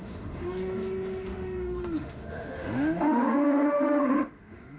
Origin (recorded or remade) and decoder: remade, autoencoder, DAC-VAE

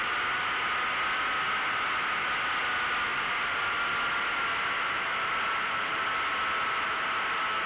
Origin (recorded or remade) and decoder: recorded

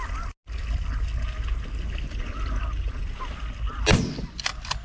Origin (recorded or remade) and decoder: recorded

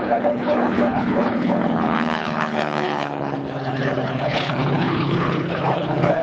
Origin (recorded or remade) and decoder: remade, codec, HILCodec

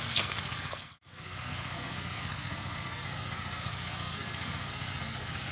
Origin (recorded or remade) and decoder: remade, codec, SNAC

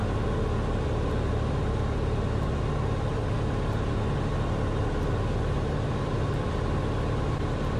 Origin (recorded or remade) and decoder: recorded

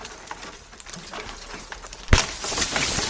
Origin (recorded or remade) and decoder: recorded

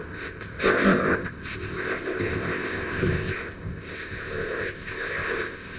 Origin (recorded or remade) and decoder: remade, codec, ZipCodec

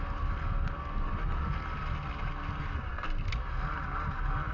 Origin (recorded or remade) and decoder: recorded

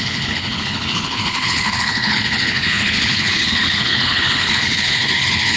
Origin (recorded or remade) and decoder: remade, codec, HILCodec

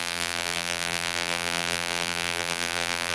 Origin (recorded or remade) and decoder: remade, vocoder, BigVGAN v2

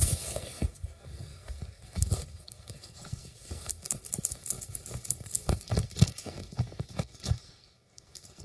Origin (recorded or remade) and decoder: remade, codec, SNAC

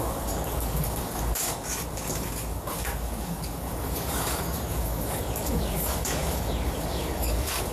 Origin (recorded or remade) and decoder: remade, codec, DAC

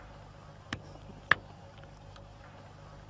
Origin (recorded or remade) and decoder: recorded